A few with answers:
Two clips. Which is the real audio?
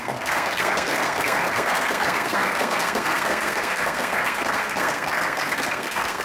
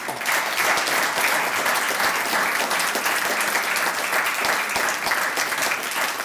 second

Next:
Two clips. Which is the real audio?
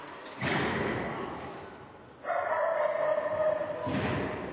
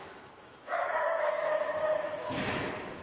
first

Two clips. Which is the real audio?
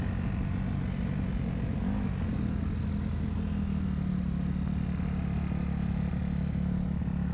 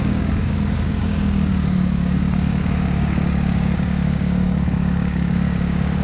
first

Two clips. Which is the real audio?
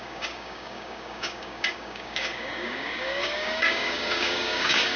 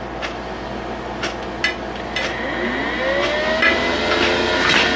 second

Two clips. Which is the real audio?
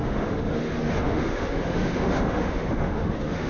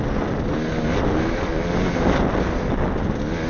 second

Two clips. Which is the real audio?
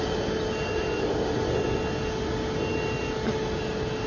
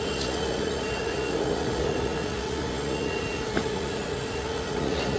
first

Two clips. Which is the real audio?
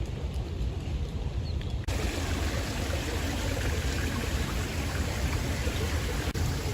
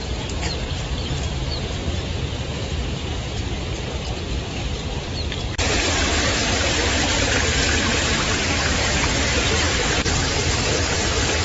first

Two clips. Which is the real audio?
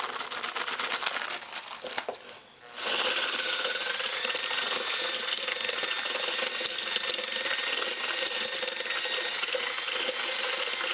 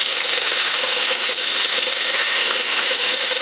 first